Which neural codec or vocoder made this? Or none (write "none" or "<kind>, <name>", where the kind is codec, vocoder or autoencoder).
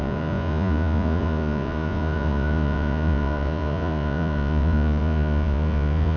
vocoder, Vocos